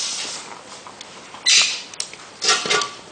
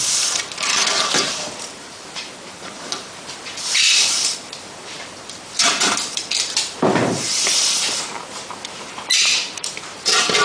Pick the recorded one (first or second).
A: first